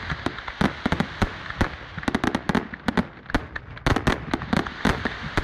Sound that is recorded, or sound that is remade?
recorded